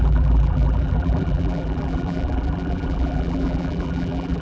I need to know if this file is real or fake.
fake